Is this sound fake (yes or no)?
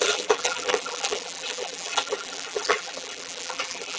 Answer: yes